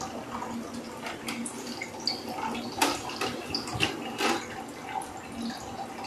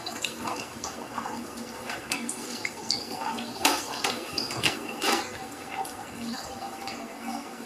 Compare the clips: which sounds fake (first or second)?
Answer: second